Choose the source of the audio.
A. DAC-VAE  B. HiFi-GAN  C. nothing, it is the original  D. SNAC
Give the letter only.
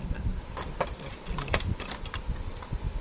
C